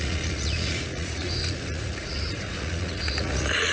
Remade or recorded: remade